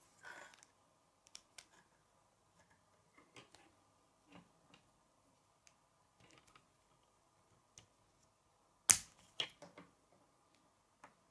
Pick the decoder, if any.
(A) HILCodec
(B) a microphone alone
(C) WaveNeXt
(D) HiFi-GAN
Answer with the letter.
B